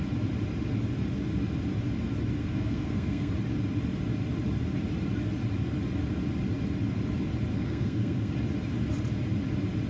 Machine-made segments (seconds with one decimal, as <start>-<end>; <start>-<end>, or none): 2.4-3.3; 7.5-8.3